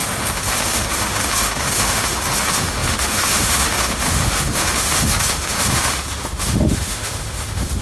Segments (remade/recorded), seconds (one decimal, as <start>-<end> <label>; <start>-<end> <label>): 0.0-7.8 remade